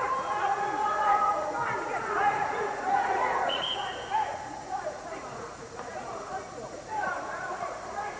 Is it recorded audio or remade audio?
remade